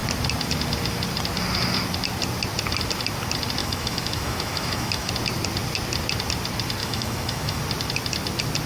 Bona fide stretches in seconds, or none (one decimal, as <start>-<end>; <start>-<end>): 0.0-3.6; 5.1-6.8; 7.6-8.7